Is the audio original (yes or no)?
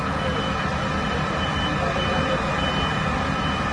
yes